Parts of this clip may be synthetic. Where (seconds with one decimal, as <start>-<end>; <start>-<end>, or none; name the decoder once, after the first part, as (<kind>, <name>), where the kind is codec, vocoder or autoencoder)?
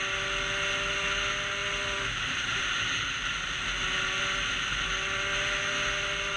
none